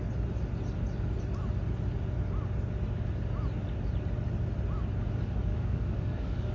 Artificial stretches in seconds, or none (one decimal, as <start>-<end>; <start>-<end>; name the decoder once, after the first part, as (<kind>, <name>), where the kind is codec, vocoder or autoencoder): 5.5-6.5 (codec, DAC)